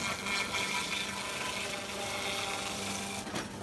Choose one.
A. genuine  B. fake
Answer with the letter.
A